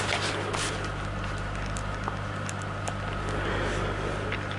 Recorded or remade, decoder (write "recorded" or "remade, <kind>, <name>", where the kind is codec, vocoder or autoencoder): recorded